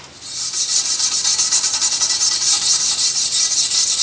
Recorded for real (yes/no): yes